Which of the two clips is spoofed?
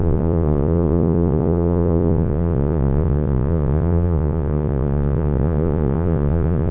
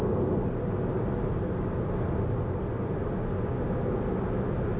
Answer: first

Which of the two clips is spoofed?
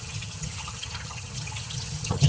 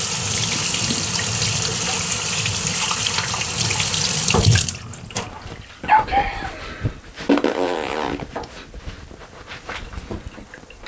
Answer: first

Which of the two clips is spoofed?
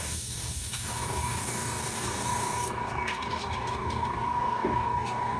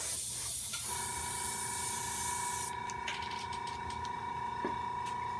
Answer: first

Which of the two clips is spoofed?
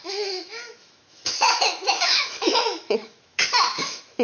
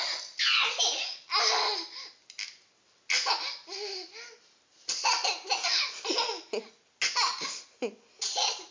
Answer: first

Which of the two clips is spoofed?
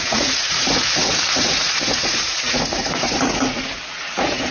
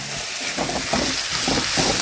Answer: first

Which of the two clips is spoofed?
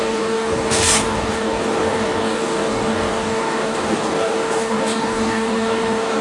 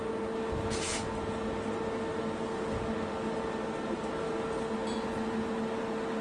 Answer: first